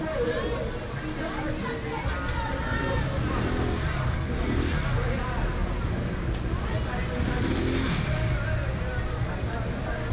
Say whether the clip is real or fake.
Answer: real